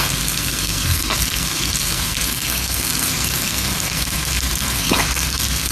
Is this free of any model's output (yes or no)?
no